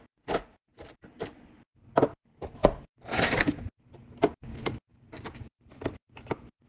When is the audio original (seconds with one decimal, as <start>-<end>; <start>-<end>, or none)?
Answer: 0.0-0.7; 1.4-4.9; 5.7-6.7